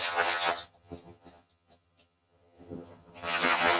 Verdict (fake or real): fake